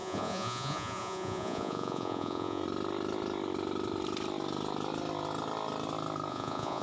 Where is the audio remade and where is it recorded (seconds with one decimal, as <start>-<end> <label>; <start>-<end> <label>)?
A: 0.0-2.6 remade; 2.6-6.3 recorded; 6.3-6.8 remade